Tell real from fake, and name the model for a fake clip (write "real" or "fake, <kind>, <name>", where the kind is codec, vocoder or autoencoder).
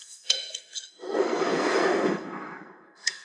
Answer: fake, codec, SNAC